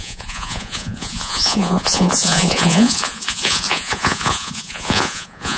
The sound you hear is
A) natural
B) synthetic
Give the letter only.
B